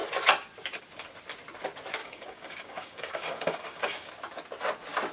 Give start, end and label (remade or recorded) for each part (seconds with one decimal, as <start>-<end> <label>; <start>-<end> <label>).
0.0-2.0 recorded; 2.0-4.1 remade; 4.1-5.1 recorded